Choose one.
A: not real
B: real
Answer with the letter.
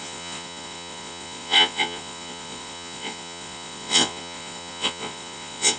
A